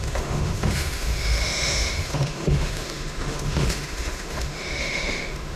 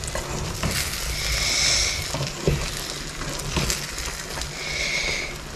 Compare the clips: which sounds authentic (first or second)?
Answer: second